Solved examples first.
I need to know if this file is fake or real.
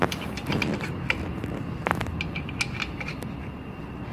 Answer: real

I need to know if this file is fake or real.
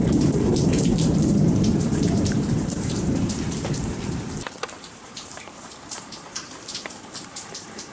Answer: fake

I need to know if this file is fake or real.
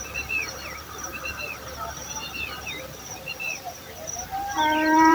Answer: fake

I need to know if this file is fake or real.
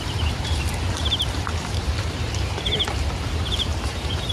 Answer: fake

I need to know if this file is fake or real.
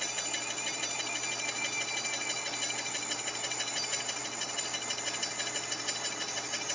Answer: real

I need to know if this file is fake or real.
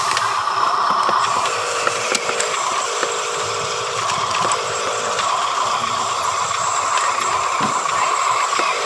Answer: fake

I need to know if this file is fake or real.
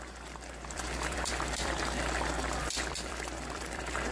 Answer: fake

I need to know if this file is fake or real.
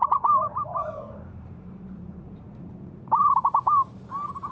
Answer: fake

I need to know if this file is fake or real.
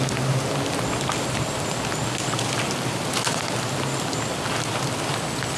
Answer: real